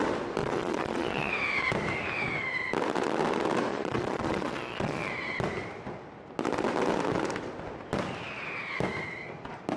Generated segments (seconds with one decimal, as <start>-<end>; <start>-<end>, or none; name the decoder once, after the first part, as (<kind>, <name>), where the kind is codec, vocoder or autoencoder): 0.4-1.3 (vocoder, Vocos); 3.7-5.1